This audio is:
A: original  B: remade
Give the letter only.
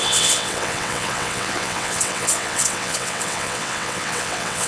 B